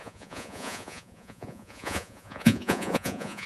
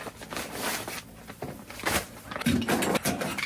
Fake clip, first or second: first